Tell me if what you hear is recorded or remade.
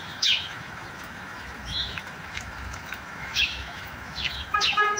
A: remade